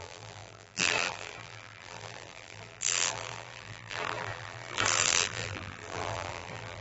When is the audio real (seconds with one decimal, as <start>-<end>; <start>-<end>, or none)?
none